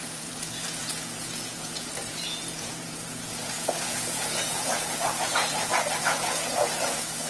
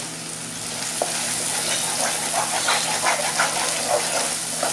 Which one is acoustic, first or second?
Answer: second